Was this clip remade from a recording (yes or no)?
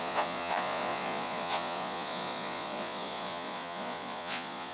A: yes